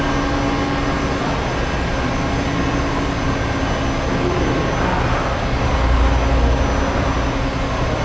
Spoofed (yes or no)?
no